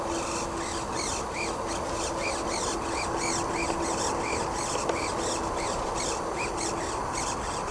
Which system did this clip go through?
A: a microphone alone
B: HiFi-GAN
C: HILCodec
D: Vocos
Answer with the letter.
A